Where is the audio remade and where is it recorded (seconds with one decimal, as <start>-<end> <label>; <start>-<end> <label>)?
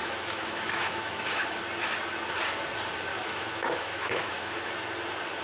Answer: 0.0-1.6 remade; 1.6-3.1 recorded; 3.1-4.7 remade; 4.7-5.4 recorded